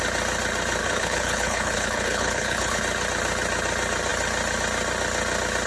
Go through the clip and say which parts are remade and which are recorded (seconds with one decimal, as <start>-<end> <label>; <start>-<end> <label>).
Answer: 0.0-0.8 recorded; 0.8-2.8 remade; 2.8-5.7 recorded